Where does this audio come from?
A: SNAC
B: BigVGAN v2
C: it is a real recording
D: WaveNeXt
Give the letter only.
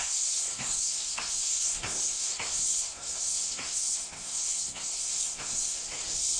A